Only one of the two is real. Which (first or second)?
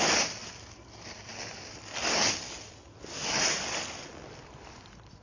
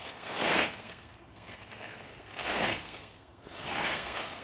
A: first